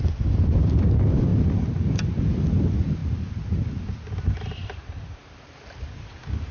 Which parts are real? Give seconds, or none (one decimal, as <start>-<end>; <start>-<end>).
0.0-4.6; 5.2-6.5